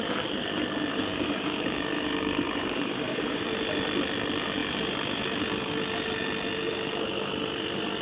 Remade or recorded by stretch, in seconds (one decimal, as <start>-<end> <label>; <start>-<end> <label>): 0.0-0.9 recorded; 0.9-3.4 remade; 3.4-8.0 recorded